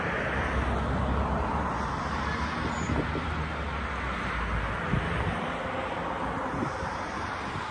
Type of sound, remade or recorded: recorded